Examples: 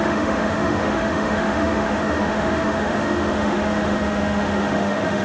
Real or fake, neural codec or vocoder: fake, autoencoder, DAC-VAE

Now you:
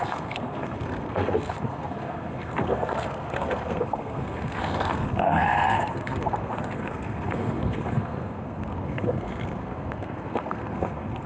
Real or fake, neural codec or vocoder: fake, codec, SNAC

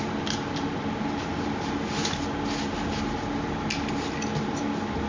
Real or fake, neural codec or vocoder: real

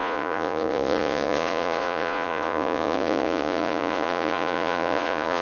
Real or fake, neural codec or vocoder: fake, vocoder, Vocos